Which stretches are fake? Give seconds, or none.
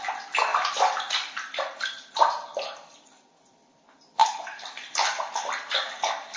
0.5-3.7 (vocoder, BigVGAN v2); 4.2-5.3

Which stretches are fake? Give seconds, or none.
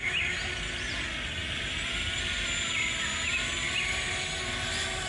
none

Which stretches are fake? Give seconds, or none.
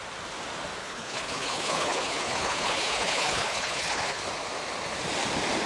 0.8-4.2 (codec, HILCodec)